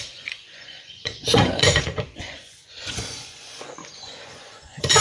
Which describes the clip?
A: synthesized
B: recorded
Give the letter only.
A